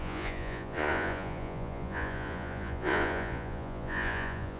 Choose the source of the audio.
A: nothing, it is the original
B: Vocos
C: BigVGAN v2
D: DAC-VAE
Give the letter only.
B